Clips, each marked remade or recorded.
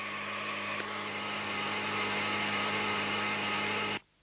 recorded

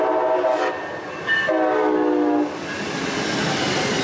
recorded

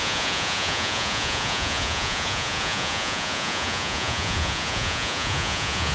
remade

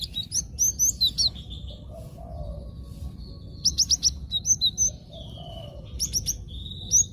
recorded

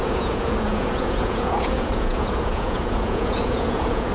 remade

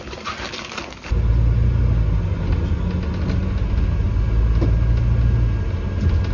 recorded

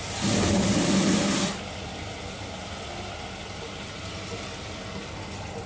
recorded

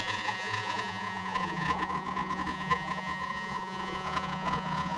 remade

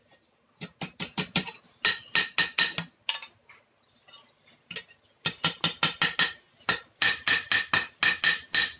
recorded